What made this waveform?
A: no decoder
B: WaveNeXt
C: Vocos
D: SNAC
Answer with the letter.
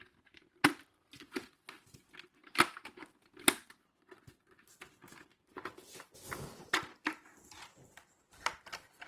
A